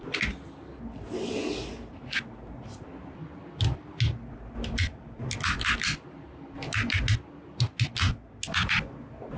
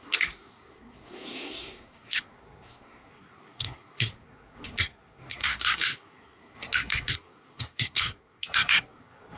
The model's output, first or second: second